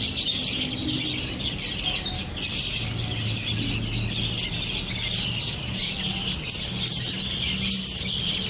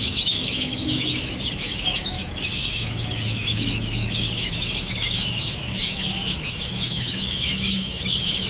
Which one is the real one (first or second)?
first